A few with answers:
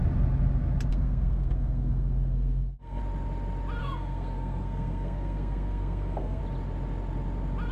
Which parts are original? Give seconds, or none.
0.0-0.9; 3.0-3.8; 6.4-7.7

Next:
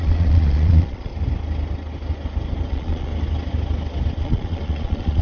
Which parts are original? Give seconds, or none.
1.1-2.7; 3.1-4.2

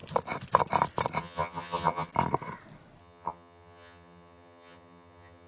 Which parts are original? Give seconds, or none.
0.0-1.2; 2.1-3.0

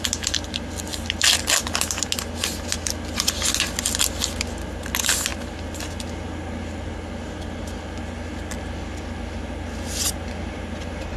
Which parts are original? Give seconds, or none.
0.0-11.2

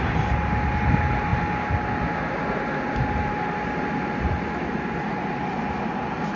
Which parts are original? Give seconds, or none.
0.0-6.4

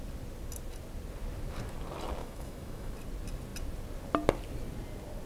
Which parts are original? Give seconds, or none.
0.0-2.2; 2.9-5.3

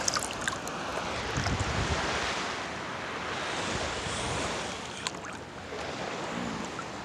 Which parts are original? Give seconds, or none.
0.0-7.0

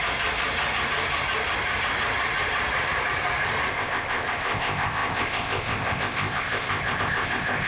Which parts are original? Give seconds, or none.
0.0-3.7